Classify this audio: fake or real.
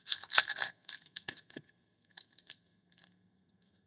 fake